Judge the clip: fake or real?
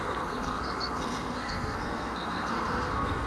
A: fake